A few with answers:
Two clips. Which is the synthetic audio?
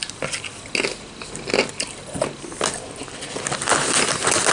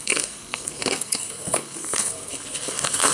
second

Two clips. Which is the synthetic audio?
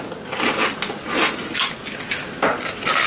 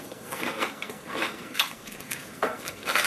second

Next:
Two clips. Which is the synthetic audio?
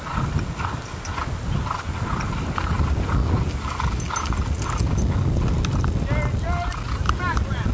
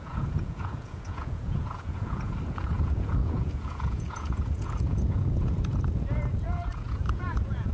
second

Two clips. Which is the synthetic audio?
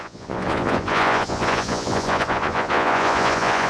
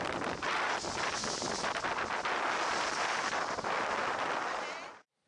first